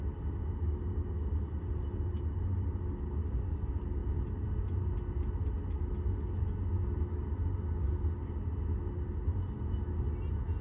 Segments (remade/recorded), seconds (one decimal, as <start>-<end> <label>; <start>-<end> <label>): 0.0-10.6 recorded